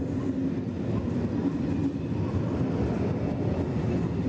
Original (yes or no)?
yes